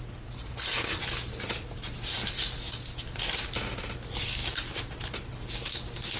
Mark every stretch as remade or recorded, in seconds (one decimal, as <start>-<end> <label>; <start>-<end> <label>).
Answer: 0.0-6.2 recorded